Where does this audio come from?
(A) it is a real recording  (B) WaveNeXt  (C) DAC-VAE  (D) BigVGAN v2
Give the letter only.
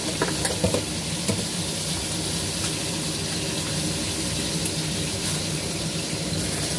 A